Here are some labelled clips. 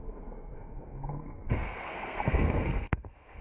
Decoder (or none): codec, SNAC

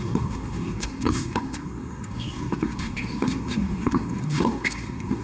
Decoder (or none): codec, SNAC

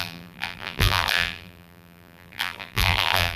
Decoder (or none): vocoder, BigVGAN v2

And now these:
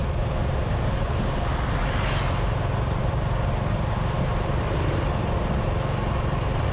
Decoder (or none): none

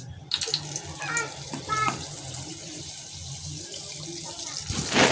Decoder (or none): none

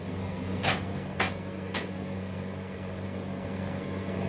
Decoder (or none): codec, SNAC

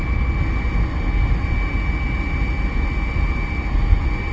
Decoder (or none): none